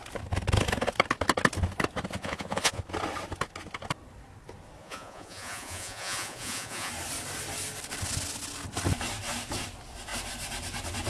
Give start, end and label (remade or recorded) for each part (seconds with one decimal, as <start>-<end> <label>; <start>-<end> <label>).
0.0-2.2 recorded; 2.2-2.8 remade; 2.8-4.8 recorded; 4.8-6.9 remade; 6.9-11.1 recorded